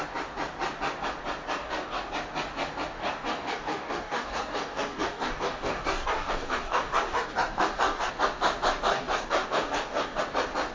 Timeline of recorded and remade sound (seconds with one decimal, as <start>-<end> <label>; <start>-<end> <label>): 0.0-1.6 recorded; 1.6-2.1 remade; 2.1-3.0 recorded; 3.0-8.1 remade; 8.1-8.9 recorded; 8.9-10.2 remade; 10.2-10.7 recorded